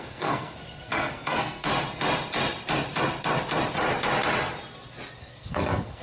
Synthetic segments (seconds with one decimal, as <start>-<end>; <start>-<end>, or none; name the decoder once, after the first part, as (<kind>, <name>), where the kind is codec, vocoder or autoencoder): 0.0-1.7 (codec, SNAC); 5.2-6.0